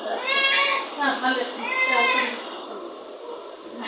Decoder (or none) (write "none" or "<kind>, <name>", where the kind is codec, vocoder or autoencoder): none